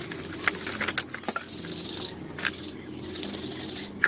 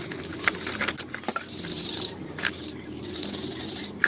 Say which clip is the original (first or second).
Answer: first